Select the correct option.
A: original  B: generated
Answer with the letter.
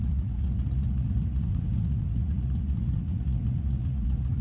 B